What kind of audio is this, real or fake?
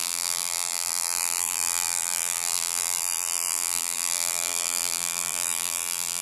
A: fake